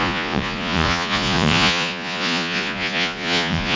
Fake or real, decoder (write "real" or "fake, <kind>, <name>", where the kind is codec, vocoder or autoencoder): fake, vocoder, Vocos